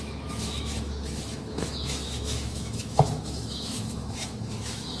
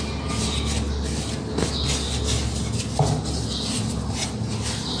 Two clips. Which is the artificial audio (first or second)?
first